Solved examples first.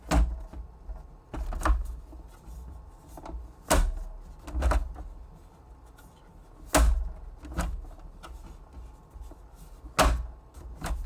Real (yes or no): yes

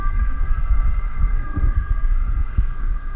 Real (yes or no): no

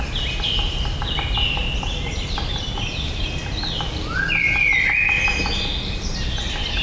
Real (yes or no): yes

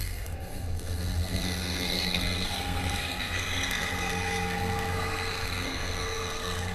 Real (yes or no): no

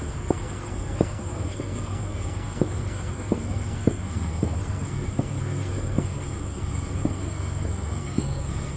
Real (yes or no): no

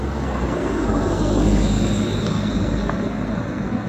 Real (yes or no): no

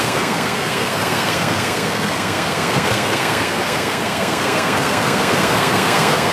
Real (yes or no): no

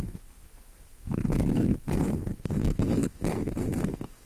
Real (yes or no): no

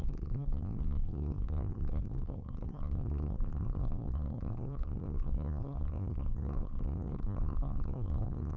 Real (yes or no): no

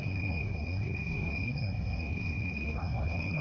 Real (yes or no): no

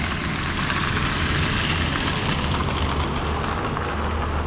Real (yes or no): yes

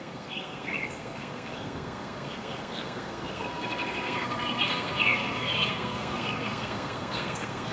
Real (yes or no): no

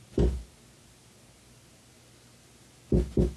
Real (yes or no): yes